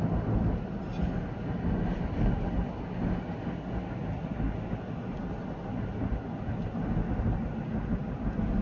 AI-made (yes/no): no